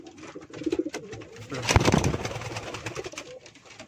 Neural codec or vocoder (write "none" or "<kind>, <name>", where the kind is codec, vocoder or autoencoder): none